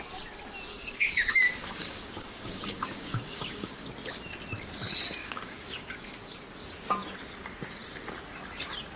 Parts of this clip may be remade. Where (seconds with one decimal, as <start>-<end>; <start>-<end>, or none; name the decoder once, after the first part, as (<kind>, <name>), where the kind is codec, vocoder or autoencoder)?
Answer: 0.7-3.9 (codec, DAC); 5.2-5.9